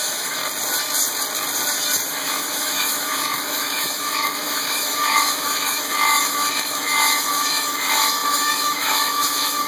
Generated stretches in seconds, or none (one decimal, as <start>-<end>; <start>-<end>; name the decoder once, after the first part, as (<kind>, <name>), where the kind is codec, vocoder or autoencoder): 0.0-0.4 (autoencoder, DAC-VAE); 2.1-9.7